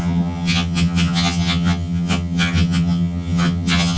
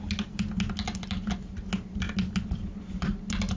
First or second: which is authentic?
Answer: second